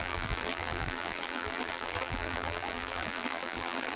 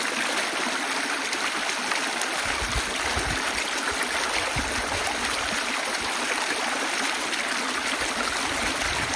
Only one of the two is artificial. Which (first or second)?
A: first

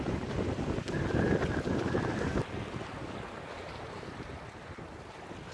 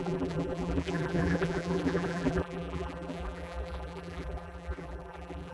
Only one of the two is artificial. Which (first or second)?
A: second